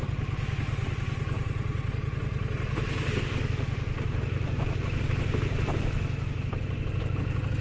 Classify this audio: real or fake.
real